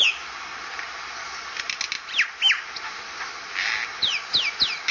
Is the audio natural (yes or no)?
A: yes